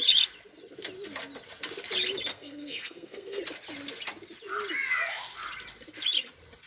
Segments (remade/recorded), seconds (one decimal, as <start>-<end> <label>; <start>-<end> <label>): 0.0-2.3 recorded; 2.3-3.4 remade; 3.4-6.7 recorded